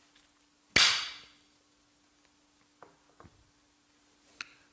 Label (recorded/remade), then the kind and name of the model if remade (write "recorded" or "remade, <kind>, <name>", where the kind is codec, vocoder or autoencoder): recorded